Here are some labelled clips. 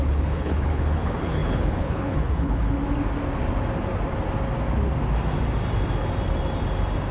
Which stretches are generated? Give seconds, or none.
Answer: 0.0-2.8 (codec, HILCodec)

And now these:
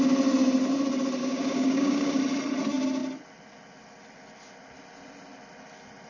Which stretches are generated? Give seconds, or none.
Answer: 1.2-2.2 (codec, DAC)

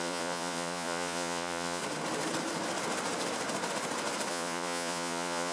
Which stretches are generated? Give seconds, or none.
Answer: 0.0-1.8 (vocoder, Vocos); 4.3-5.5

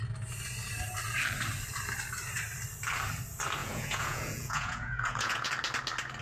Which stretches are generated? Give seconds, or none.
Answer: 3.6-5.5 (vocoder, Vocos)

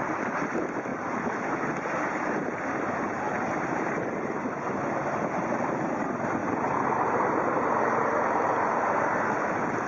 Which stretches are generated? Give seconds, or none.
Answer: 0.9-5.1 (vocoder, BigVGAN v2); 6.4-7.8

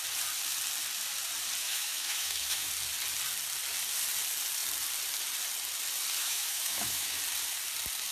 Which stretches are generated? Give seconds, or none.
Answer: 1.6-2.7 (autoencoder, DAC-VAE); 6.2-7.2

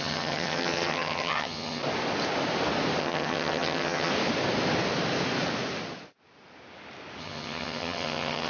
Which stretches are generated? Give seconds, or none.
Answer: 0.0-1.8 (vocoder, HiFi-GAN); 3.0-4.1; 7.2-8.5